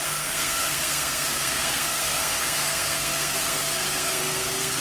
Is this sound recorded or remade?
remade